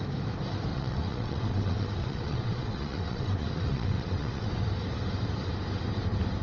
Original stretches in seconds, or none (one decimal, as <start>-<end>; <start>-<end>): 0.0-0.7; 4.5-6.4